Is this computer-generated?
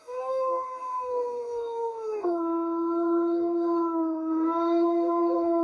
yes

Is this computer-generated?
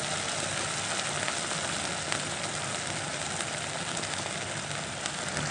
no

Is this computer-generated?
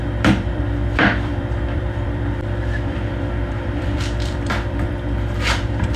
yes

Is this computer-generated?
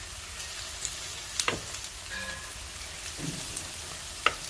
no